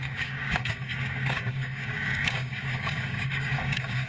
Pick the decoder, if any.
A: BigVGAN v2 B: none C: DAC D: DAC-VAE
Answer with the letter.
C